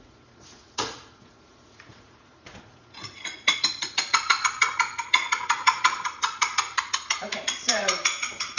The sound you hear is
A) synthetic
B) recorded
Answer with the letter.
A